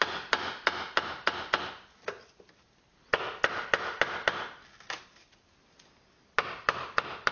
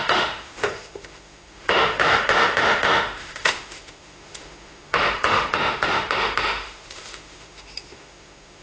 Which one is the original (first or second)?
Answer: first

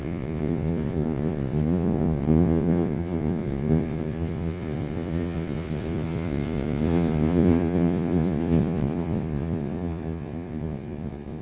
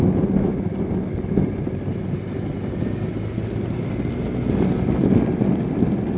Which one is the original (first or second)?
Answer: second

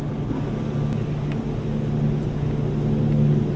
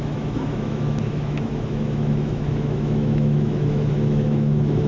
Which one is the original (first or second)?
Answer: first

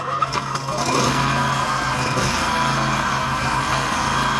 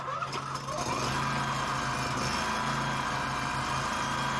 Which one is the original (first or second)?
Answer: second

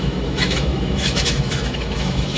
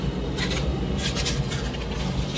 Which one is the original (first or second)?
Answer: second